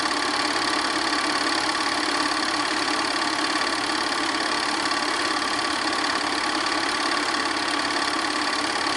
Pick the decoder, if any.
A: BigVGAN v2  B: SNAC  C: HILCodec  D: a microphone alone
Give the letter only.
D